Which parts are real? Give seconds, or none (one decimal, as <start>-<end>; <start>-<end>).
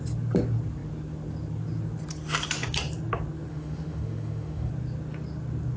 0.0-3.5; 4.7-5.8